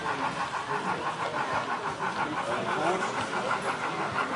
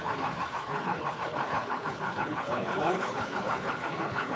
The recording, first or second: first